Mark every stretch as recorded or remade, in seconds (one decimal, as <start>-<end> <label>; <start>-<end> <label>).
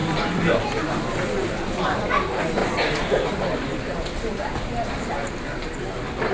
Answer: 0.0-6.3 recorded